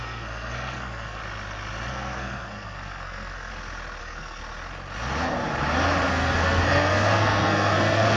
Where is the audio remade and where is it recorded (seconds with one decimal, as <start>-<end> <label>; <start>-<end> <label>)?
0.0-1.2 remade; 1.2-1.9 recorded; 1.9-3.5 remade; 3.5-4.0 recorded; 4.0-4.4 remade; 4.4-6.1 recorded; 6.1-8.2 remade